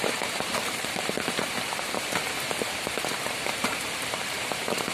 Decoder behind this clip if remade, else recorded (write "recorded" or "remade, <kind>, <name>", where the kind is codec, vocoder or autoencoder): remade, vocoder, BigVGAN v2